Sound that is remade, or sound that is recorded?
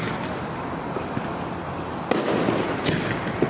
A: recorded